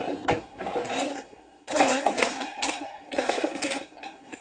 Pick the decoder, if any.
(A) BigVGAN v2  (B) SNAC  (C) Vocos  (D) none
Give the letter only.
B